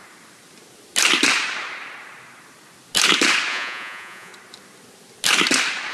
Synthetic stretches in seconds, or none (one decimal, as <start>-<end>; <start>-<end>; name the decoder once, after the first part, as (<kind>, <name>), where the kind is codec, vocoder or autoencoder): 3.5-4.3 (vocoder, Vocos)